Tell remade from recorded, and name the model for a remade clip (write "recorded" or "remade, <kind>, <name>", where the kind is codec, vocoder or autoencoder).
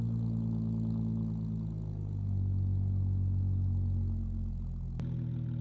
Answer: recorded